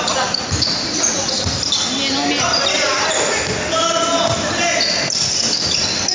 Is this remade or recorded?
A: recorded